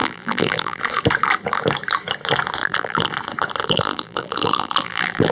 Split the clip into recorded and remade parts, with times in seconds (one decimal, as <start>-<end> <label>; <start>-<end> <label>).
0.0-0.8 remade; 0.8-2.6 recorded; 2.6-3.1 remade; 3.1-3.6 recorded; 3.6-5.3 remade